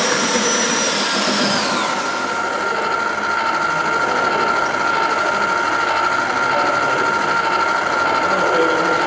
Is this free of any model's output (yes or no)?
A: yes